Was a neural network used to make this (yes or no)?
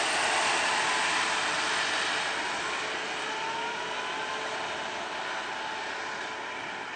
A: no